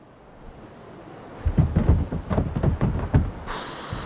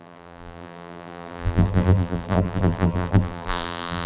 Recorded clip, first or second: first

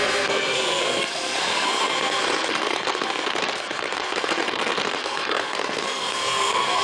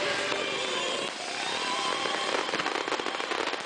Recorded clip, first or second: second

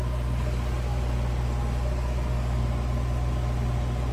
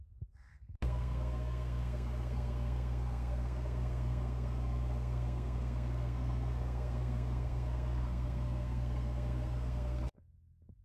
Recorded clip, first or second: first